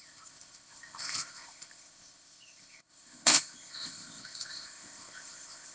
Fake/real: fake